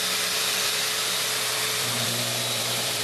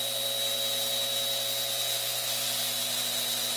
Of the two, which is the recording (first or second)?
second